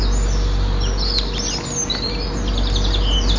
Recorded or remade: recorded